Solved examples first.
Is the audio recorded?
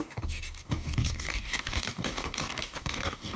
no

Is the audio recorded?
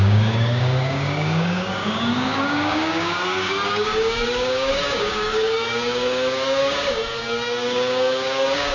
no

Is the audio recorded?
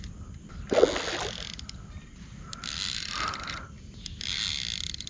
yes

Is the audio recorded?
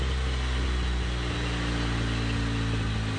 yes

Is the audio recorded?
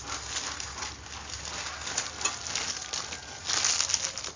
yes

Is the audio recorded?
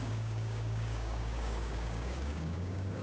no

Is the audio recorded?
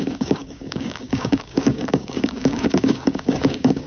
no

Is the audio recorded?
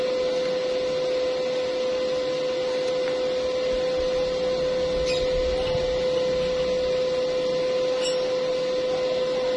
yes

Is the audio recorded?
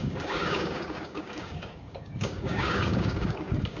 no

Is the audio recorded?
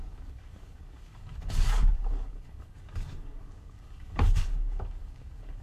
no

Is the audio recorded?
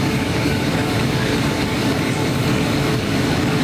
no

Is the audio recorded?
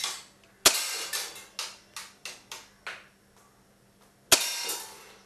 yes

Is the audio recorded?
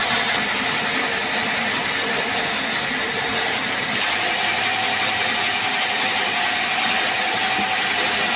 yes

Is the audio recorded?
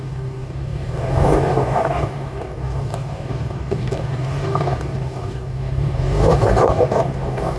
no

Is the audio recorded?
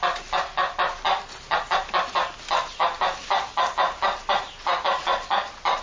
yes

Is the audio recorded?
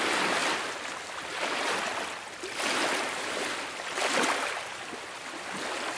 yes